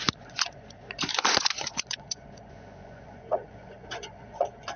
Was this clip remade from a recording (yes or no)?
yes